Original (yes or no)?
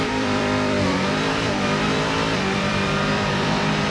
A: no